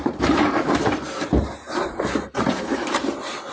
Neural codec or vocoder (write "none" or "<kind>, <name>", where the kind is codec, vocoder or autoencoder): vocoder, BigVGAN v2